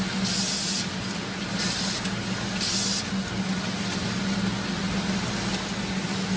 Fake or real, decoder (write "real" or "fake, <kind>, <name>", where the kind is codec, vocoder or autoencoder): real